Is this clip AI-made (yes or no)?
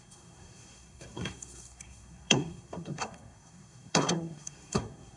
yes